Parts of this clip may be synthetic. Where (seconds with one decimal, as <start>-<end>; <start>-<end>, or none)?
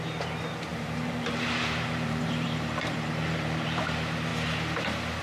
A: 0.7-3.8